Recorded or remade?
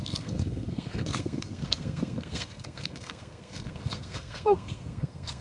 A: remade